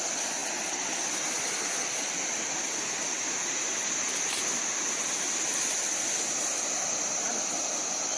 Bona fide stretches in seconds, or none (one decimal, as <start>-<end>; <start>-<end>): 0.0-8.2